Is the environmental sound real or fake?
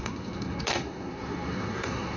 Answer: fake